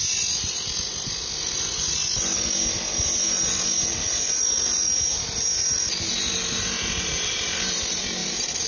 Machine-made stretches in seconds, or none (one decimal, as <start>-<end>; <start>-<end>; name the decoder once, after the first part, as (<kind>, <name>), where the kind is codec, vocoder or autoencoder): none